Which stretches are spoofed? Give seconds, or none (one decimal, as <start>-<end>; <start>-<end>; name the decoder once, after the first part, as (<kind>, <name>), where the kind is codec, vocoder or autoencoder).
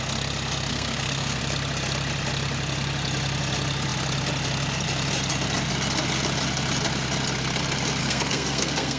0.7-1.4 (codec, SNAC); 8.0-9.0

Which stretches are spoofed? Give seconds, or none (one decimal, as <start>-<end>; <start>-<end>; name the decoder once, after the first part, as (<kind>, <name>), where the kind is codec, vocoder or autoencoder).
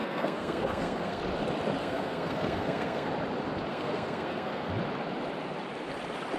0.0-1.2 (codec, SNAC); 1.8-3.1; 3.7-4.7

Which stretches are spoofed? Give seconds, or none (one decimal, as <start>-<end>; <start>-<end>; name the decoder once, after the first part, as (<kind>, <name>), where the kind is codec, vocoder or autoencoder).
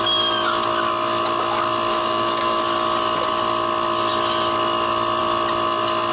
1.9-2.6 (codec, DAC)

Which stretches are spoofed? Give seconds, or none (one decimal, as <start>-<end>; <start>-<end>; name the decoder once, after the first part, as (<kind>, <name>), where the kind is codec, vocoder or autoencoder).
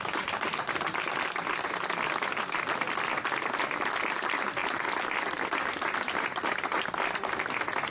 none